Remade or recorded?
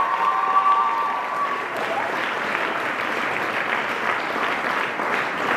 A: remade